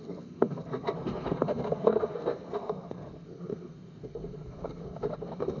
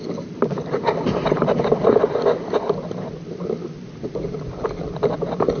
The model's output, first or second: first